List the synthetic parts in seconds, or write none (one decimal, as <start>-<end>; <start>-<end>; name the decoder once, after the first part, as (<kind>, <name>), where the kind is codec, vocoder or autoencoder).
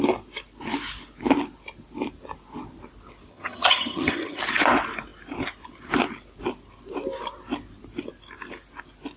3.3-4.4 (vocoder, HiFi-GAN)